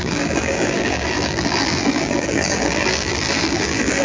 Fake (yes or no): yes